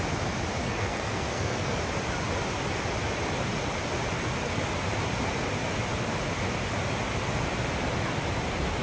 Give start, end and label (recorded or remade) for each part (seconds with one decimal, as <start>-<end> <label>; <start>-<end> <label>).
0.0-0.6 recorded; 0.6-1.8 remade; 1.8-8.8 recorded